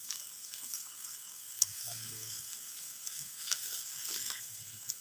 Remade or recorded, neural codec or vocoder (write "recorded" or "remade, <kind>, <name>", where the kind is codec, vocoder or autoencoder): remade, codec, SNAC